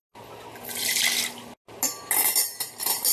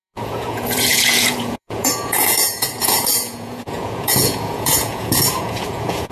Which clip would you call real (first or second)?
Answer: first